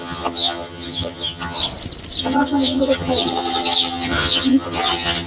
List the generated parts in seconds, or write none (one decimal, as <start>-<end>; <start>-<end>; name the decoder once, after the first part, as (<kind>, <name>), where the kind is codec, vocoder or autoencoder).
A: 0.0-1.6 (vocoder, HiFi-GAN); 2.2-5.3